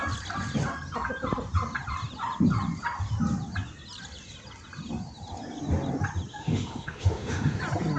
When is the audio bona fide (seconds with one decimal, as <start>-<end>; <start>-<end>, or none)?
0.0-6.3; 7.6-8.0